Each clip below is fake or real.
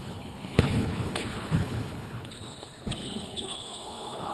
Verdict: fake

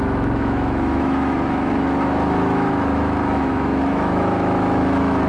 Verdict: fake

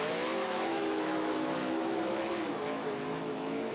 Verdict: fake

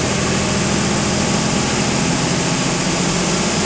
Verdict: real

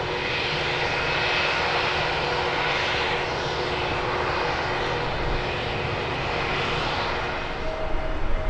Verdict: real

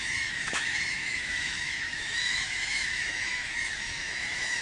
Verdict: fake